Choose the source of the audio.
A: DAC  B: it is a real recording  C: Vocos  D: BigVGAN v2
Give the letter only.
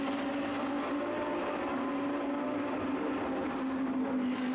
B